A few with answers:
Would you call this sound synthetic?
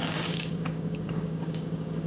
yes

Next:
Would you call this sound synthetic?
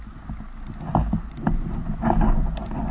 no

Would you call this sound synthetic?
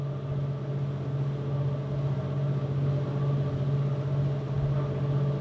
no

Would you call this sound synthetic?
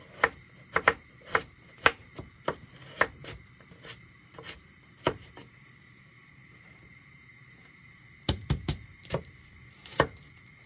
yes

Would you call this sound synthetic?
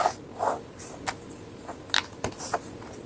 no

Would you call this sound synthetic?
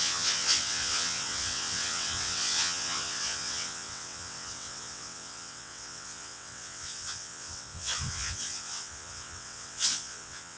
yes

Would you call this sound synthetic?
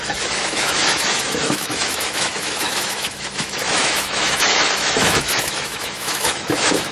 yes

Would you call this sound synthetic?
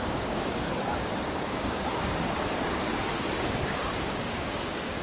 yes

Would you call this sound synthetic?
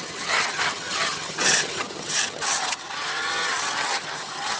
yes